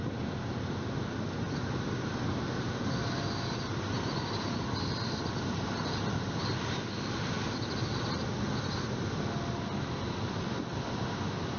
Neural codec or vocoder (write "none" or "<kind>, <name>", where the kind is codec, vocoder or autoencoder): none